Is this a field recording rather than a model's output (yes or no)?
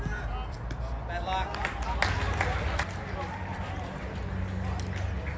yes